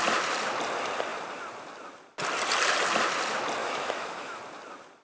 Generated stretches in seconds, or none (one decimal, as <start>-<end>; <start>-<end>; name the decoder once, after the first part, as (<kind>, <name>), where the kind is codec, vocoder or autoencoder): 3.6-4.4 (autoencoder, DAC-VAE)